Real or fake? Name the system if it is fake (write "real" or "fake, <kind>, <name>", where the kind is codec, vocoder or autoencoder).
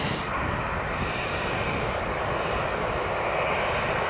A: real